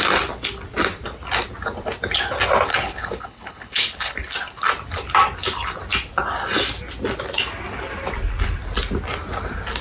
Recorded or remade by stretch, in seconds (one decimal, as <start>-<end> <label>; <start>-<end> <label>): 0.0-2.7 recorded; 2.7-4.3 remade; 4.3-9.8 recorded

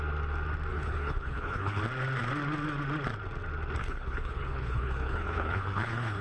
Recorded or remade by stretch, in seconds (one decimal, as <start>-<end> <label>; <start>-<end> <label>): 0.0-0.7 recorded; 0.7-1.8 remade; 1.8-3.8 recorded; 3.8-6.2 remade

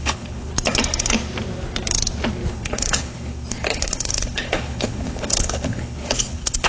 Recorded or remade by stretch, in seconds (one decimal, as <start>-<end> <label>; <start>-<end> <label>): 0.0-0.5 remade; 0.5-2.5 recorded; 2.5-6.7 remade

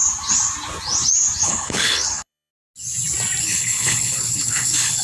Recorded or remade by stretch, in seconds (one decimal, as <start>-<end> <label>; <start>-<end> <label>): 0.0-1.4 recorded; 1.4-2.5 remade; 2.5-3.4 recorded; 3.4-5.0 remade